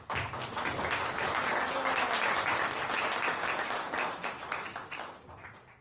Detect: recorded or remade recorded